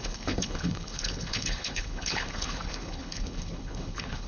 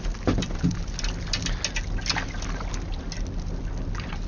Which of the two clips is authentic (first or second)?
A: second